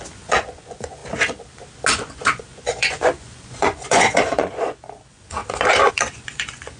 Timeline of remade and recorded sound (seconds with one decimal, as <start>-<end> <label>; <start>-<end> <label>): 0.0-1.0 remade; 1.0-1.9 recorded; 1.9-5.4 remade; 5.4-5.9 recorded; 5.9-6.8 remade